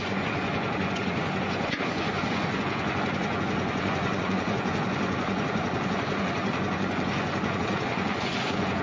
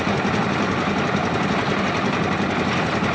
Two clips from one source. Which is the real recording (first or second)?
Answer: second